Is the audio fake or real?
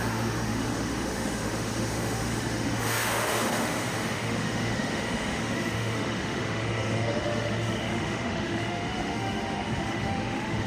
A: fake